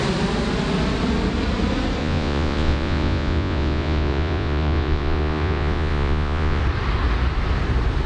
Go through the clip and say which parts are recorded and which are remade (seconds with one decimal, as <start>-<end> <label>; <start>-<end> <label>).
0.0-2.0 recorded; 2.0-6.6 remade; 6.6-8.1 recorded